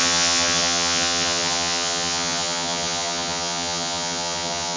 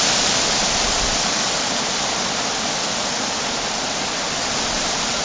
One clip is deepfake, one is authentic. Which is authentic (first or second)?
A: second